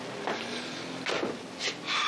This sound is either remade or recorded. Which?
recorded